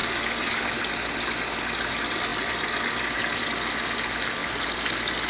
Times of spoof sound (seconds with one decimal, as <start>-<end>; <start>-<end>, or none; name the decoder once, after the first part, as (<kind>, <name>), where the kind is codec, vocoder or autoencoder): 0.0-0.8 (codec, DAC)